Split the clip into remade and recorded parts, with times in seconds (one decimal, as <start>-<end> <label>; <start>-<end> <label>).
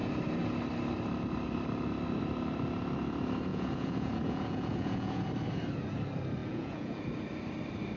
0.0-3.5 recorded; 3.5-5.3 remade; 5.3-6.4 recorded; 6.4-7.0 remade; 7.0-8.0 recorded